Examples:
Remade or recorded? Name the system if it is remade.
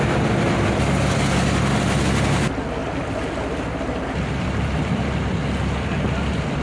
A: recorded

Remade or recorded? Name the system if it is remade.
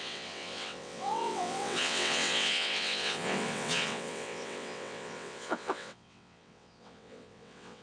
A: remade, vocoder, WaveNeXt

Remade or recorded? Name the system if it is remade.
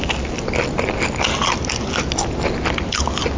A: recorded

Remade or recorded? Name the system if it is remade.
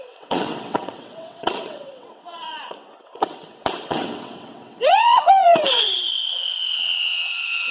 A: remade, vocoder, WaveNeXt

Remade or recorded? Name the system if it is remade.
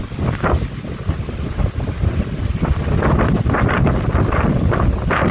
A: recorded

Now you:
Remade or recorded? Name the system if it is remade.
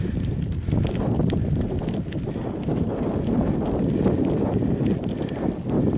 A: recorded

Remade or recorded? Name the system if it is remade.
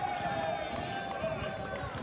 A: recorded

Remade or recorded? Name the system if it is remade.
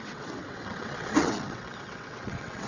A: remade, vocoder, WaveNeXt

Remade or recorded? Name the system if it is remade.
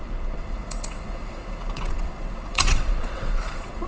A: remade, vocoder, WaveNeXt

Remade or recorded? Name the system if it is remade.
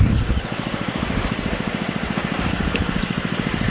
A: recorded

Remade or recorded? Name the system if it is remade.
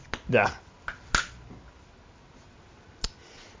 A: recorded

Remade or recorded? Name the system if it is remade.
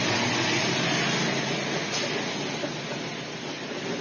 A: recorded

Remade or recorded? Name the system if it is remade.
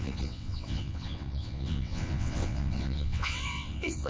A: remade, vocoder, WaveNeXt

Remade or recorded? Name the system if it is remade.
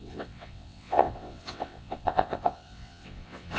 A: remade, vocoder, WaveNeXt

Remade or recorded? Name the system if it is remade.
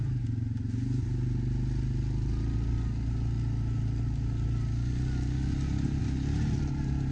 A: recorded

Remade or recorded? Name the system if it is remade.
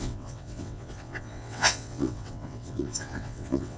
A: remade, vocoder, WaveNeXt